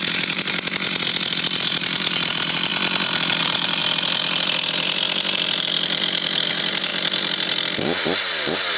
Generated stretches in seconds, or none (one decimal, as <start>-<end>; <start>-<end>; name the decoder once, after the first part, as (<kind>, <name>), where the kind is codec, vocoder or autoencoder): 0.0-2.7 (vocoder, BigVGAN v2); 3.4-3.8; 6.5-6.9